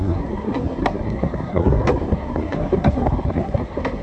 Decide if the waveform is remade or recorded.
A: remade